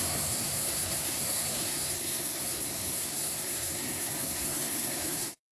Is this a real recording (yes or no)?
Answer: no